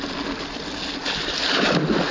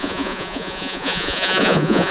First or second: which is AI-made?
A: second